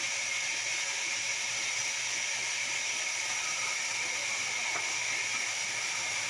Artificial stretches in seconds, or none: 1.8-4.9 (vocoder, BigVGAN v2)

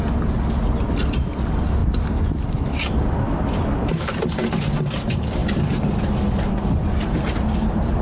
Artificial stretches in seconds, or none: none

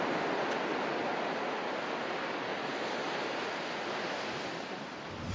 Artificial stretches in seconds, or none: 2.5-3.5 (vocoder, BigVGAN v2)

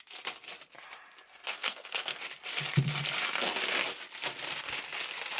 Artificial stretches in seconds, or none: 1.5-2.2 (codec, SNAC)